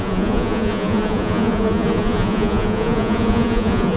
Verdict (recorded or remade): remade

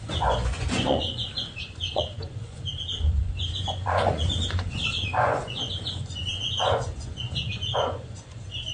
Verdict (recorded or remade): remade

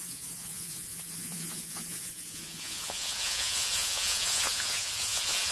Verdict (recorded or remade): remade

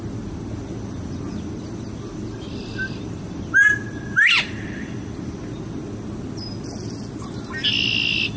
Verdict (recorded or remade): recorded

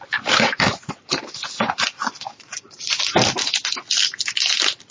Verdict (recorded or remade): recorded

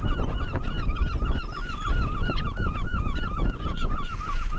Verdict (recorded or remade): remade